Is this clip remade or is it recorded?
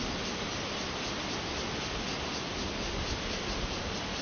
recorded